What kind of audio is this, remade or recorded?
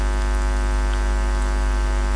recorded